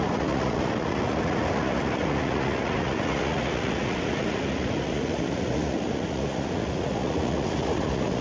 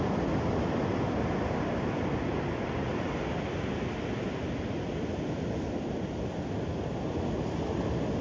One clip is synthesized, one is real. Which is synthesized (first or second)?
first